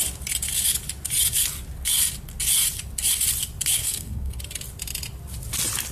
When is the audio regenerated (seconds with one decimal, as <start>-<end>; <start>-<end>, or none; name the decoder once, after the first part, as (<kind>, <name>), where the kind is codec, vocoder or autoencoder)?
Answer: 3.8-4.4 (codec, SNAC)